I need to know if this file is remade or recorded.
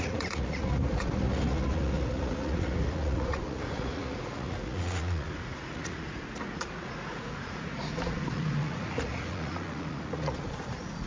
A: remade